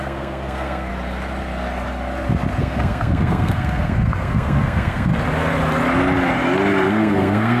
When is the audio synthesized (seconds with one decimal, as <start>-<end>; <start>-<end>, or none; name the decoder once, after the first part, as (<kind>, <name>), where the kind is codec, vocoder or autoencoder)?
0.0-0.9 (codec, SNAC); 2.6-5.1; 6.9-7.6